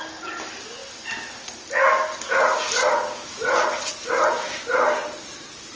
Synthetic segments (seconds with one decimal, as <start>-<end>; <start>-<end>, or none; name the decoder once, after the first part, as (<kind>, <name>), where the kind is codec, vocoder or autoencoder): none